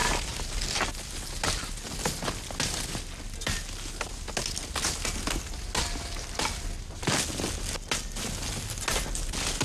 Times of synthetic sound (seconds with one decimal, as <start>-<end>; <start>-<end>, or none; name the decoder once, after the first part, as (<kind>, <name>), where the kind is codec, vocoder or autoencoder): none